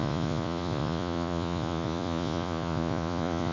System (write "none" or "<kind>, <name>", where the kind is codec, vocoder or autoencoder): vocoder, Vocos